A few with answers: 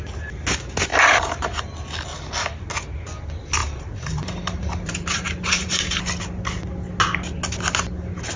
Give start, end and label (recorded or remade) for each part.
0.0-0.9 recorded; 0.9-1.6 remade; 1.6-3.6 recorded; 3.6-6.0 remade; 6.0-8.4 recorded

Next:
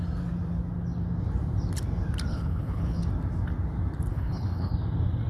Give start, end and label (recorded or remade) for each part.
0.0-2.3 recorded; 2.3-3.0 remade; 3.0-4.1 recorded; 4.1-4.7 remade; 4.7-5.3 recorded

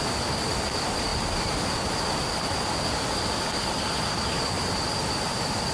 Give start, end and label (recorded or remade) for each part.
0.0-5.7 recorded